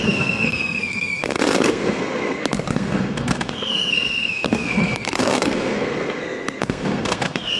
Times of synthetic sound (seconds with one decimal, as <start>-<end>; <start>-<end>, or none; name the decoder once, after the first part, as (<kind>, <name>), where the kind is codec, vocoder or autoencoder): 0.0-7.6 (codec, SNAC)